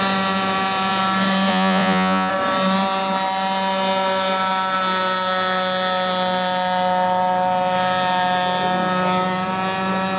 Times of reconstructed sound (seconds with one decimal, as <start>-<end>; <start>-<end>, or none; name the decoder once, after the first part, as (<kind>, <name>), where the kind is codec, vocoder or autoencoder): 1.5-2.3 (vocoder, Vocos)